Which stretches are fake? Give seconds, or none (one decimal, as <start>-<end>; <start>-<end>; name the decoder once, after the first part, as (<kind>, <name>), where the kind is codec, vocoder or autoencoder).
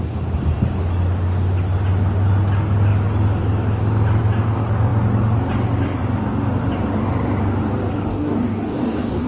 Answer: 8.1-9.3 (codec, DAC)